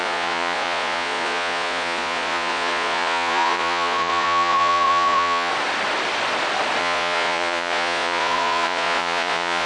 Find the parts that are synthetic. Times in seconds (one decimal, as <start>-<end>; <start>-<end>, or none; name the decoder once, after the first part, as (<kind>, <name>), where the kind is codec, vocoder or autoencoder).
0.0-5.5 (vocoder, Vocos); 6.8-9.7